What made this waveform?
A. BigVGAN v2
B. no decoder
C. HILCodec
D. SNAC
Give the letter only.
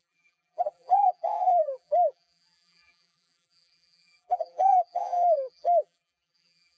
A